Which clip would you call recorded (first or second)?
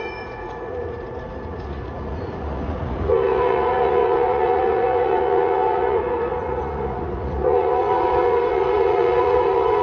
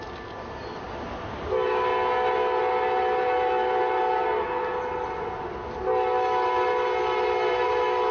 second